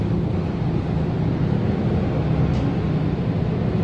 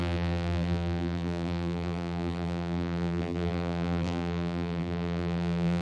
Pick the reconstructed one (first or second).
second